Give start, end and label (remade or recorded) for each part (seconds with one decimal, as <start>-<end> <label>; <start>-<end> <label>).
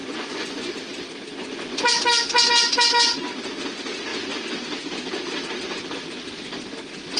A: 0.0-0.7 remade; 0.7-1.3 recorded; 1.3-2.0 remade; 2.0-7.2 recorded